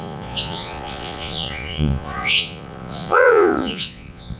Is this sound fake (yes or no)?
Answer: yes